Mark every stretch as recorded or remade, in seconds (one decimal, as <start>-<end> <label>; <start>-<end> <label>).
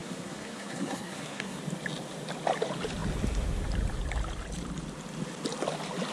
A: 0.0-1.6 remade; 1.6-6.1 recorded